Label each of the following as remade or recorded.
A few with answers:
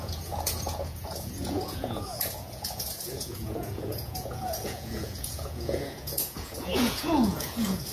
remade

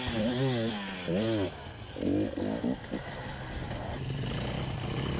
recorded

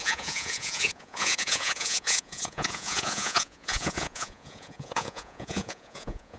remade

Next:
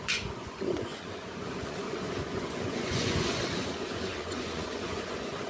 remade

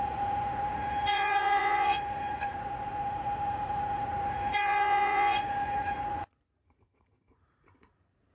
remade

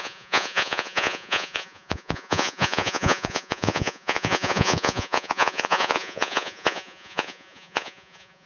remade